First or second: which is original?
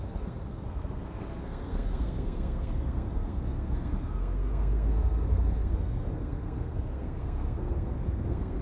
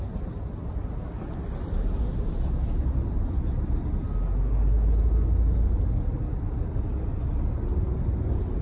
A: second